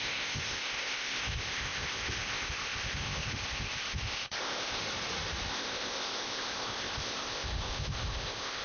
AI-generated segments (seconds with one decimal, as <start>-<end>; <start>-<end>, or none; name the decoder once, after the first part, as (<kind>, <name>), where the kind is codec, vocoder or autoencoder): 0.0-4.8 (codec, ZipCodec); 5.5-8.6